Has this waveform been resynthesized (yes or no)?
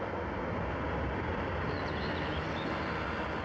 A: no